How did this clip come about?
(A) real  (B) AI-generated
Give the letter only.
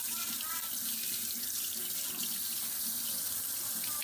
A